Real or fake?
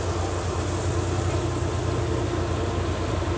real